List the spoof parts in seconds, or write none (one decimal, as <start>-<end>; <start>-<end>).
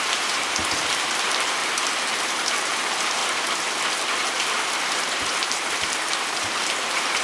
0.0-1.6; 2.2-3.2; 4.9-7.2